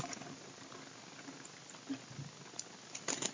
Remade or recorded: recorded